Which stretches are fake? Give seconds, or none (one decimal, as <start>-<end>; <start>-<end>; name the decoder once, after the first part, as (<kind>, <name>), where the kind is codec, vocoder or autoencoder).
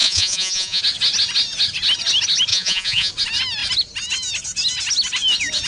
0.0-0.8 (vocoder, Vocos); 2.5-3.1